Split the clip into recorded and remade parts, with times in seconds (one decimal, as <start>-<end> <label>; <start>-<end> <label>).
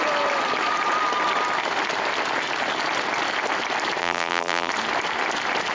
0.0-4.0 recorded; 4.0-4.7 remade; 4.7-5.7 recorded